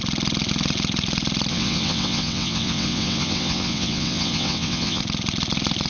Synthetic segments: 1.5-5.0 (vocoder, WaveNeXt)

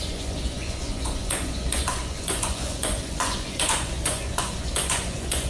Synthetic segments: 0.0-5.5 (vocoder, Vocos)

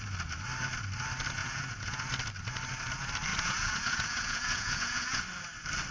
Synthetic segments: 1.4-2.1 (vocoder, Vocos); 3.3-5.2

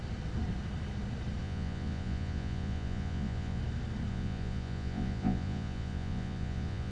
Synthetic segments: 1.4-3.6 (vocoder, Vocos); 4.1-6.9

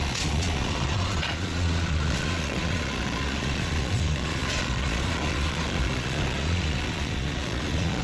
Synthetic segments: 0.0-8.0 (vocoder, Vocos)